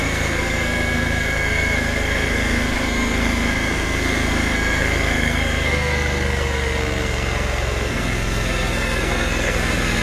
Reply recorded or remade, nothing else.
remade